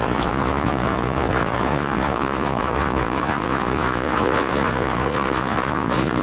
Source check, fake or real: fake